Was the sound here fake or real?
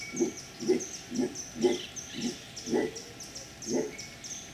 real